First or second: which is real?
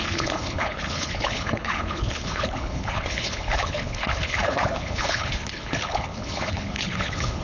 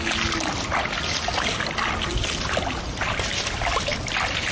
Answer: second